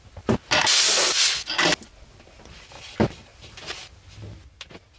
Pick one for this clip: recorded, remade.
recorded